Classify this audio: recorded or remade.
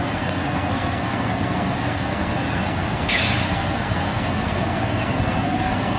remade